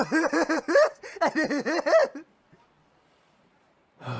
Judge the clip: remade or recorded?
remade